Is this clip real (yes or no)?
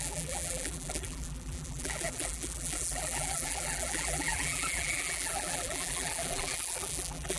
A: no